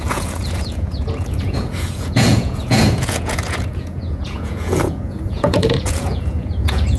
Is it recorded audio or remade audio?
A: remade